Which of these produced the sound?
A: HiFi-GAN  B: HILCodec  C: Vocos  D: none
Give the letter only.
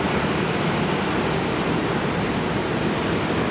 D